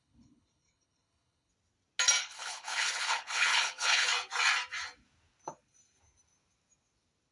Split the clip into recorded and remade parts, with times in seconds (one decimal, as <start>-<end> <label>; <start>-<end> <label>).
0.0-1.5 remade; 1.5-2.2 recorded; 2.2-4.1 remade; 4.1-7.3 recorded